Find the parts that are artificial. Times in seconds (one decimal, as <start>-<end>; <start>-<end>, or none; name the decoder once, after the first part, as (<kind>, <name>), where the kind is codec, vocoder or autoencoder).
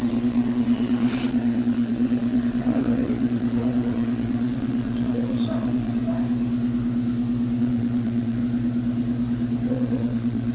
0.0-6.0 (vocoder, WaveNeXt); 7.6-8.4; 9.7-10.5